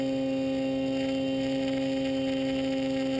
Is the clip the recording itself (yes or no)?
yes